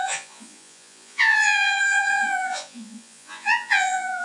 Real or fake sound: fake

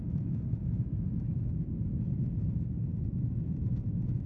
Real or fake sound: fake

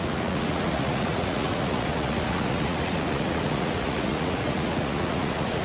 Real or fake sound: fake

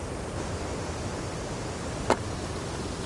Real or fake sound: real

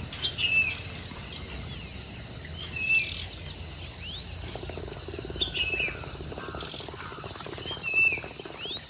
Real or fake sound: real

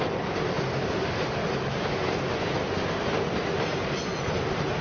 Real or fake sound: real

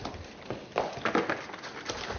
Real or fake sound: real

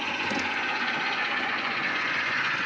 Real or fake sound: fake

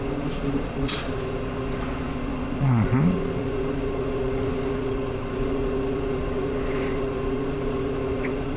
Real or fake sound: fake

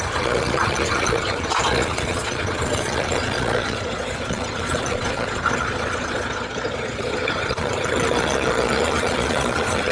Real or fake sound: fake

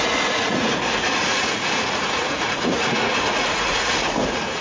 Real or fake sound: fake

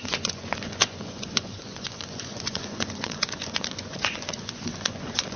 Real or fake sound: fake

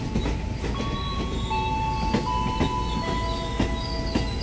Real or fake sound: real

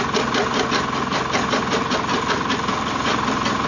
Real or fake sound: real